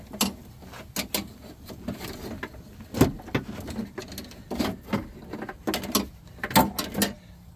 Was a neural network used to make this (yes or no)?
no